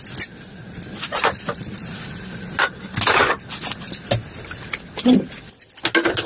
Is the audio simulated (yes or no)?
no